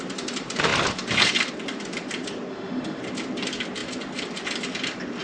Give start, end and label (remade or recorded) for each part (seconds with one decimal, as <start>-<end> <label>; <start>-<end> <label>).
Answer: 0.0-2.5 recorded; 2.5-3.0 remade; 3.0-5.2 recorded